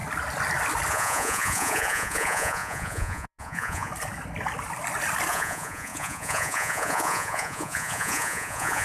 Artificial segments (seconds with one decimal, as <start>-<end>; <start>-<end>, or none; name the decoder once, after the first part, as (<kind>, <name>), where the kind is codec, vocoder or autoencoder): 0.9-3.9 (vocoder, Vocos); 5.3-8.8